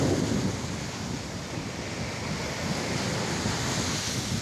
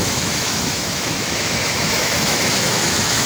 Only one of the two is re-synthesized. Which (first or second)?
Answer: second